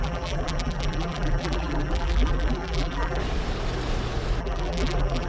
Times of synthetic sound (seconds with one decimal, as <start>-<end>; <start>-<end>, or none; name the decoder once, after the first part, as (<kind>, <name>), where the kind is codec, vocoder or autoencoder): 0.0-3.2 (vocoder, BigVGAN v2); 4.4-5.3